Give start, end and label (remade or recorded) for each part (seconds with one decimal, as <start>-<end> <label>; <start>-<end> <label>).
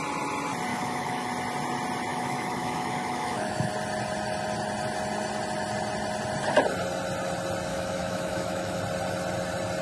0.0-0.7 recorded; 0.7-1.3 remade; 1.3-2.1 recorded; 2.1-3.7 remade; 3.7-7.7 recorded; 7.7-8.8 remade; 8.8-9.8 recorded